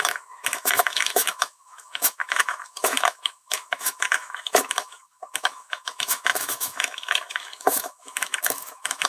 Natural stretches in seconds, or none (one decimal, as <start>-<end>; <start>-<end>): none